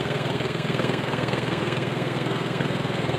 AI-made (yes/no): yes